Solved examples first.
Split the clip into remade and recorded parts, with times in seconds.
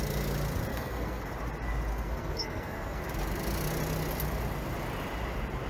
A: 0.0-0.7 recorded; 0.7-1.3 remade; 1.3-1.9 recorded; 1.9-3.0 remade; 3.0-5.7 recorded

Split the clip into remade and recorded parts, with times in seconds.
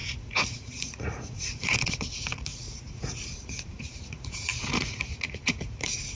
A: 0.0-6.1 remade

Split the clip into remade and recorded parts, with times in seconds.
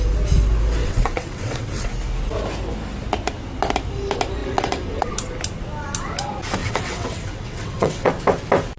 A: 0.0-0.8 recorded; 0.8-1.9 remade; 1.9-4.4 recorded; 4.4-5.1 remade; 5.1-6.6 recorded; 6.6-8.1 remade; 8.1-8.8 recorded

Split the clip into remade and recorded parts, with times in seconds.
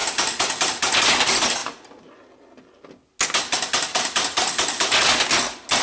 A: 0.0-5.8 recorded